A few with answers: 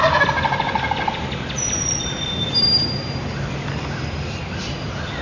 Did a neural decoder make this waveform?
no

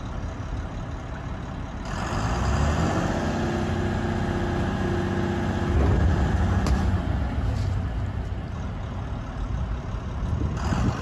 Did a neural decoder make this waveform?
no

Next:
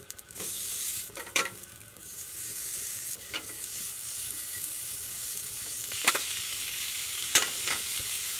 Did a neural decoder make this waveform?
yes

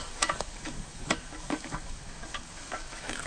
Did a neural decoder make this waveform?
yes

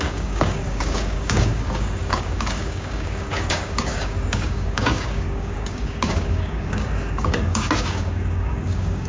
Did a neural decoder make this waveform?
yes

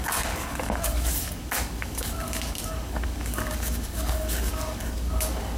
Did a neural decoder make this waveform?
yes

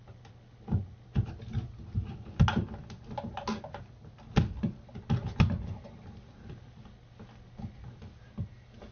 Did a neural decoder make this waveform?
no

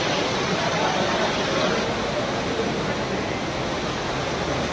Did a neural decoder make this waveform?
no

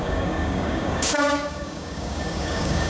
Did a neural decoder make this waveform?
yes